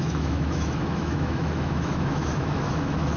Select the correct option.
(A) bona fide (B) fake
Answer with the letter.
B